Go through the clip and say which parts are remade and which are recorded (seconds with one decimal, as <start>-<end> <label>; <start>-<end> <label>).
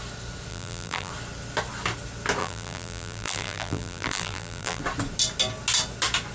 0.0-0.5 recorded; 0.5-1.1 remade; 1.1-2.4 recorded; 2.4-4.8 remade; 4.8-6.3 recorded